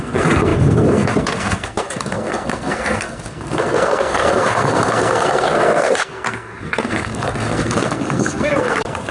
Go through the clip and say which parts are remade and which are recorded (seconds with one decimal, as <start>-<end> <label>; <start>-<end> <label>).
0.0-9.1 remade